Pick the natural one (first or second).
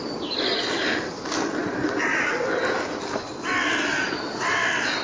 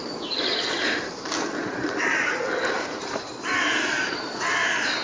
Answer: first